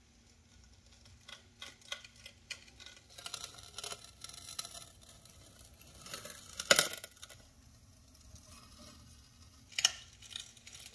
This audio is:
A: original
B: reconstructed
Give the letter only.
A